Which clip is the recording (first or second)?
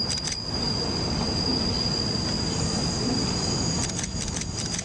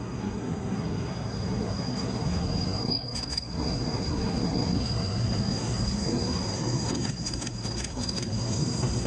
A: first